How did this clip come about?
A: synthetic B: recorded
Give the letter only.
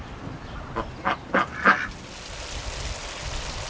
B